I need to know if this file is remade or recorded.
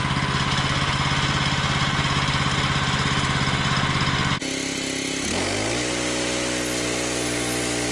recorded